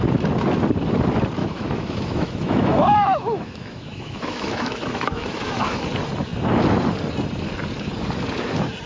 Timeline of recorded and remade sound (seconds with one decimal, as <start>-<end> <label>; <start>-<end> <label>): 0.0-1.4 recorded; 1.4-5.8 remade; 5.8-8.9 recorded